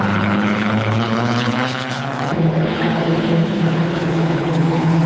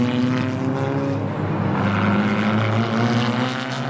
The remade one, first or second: first